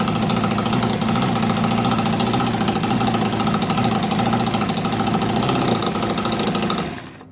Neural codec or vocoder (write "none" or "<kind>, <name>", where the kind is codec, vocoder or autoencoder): none